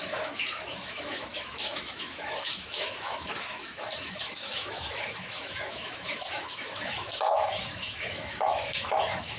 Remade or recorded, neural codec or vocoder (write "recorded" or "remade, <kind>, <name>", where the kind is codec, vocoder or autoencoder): remade, autoencoder, DAC-VAE